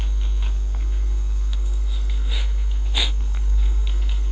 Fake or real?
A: fake